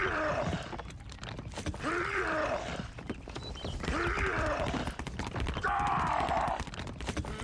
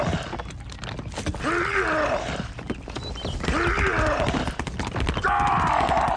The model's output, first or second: first